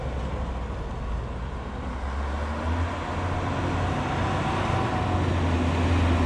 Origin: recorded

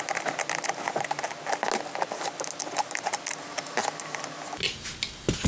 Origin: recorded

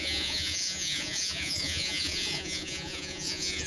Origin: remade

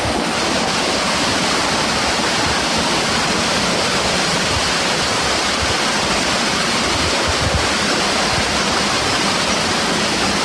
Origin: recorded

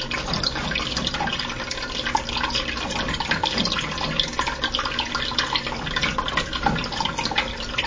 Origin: recorded